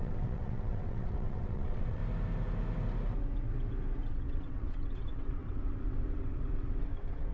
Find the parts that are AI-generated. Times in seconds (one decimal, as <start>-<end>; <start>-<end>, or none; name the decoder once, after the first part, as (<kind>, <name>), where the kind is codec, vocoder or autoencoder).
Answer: 0.0-2.0 (vocoder, WaveNeXt); 4.1-7.3